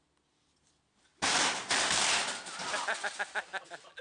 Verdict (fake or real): real